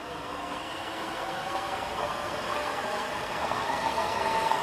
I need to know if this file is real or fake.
fake